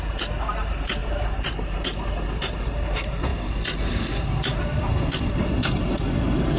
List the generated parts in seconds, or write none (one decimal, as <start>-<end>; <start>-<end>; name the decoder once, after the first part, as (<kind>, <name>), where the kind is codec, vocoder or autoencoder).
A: none